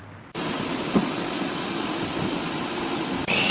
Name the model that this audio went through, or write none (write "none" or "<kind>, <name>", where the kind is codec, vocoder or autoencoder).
none